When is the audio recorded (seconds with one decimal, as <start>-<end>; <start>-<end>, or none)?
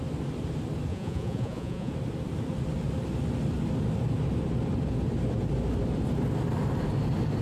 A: 0.0-0.9; 1.9-7.4